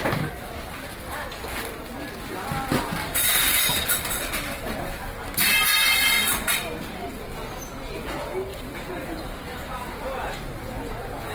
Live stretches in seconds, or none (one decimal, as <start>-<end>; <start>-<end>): 0.0-8.5; 10.0-11.3